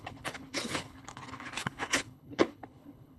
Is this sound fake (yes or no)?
yes